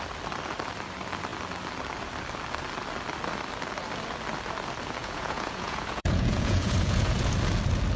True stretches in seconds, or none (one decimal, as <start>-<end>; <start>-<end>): 0.0-5.0; 7.3-8.0